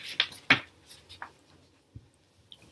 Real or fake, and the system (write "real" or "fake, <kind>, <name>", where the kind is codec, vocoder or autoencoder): real